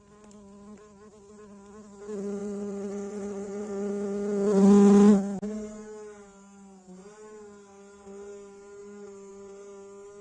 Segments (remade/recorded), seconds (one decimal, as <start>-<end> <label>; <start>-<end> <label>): 0.0-2.4 recorded; 2.4-3.9 remade; 3.9-10.2 recorded